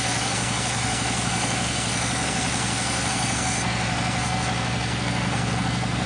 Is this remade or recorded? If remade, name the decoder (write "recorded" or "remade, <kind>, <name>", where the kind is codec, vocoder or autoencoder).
remade, codec, SNAC